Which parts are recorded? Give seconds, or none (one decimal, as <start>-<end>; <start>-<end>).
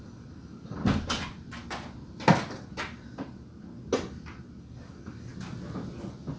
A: 0.8-4.6; 5.3-6.4